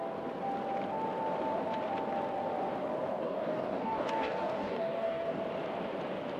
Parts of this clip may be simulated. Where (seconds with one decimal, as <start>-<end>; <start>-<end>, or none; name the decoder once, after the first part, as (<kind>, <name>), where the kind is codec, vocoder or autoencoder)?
3.1-5.4 (codec, DAC)